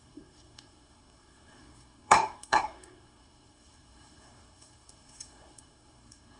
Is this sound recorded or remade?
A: remade